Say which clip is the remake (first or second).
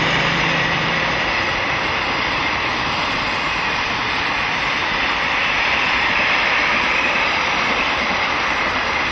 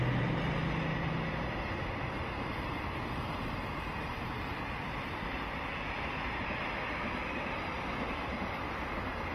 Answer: first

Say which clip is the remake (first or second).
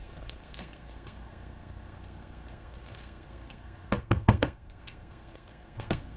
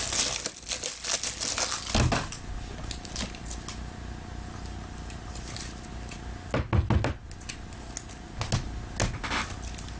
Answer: first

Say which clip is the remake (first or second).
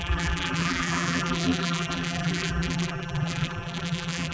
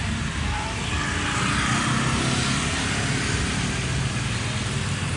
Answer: first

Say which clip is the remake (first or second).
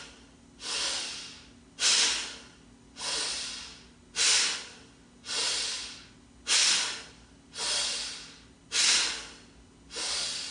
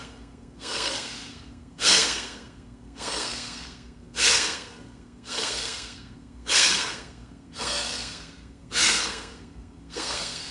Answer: second